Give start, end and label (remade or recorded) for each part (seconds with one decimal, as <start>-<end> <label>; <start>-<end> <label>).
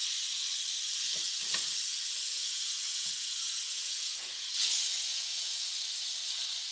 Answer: 0.0-2.3 recorded; 2.3-4.5 remade; 4.5-5.1 recorded; 5.1-5.7 remade; 5.7-6.7 recorded